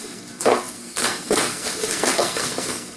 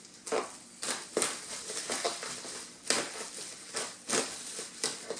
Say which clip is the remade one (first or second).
first